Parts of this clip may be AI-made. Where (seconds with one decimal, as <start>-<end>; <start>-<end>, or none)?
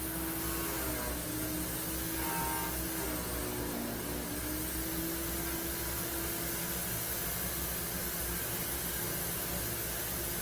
none